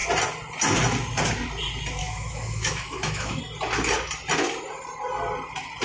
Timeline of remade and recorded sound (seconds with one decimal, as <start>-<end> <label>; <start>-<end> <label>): 0.0-2.0 recorded; 2.0-3.4 remade; 3.4-5.8 recorded